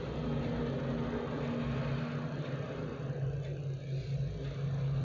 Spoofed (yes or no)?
no